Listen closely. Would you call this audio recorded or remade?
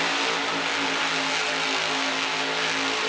recorded